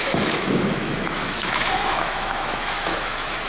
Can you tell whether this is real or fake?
fake